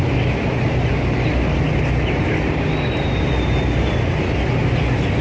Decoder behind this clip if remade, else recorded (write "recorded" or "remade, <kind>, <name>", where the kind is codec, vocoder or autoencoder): recorded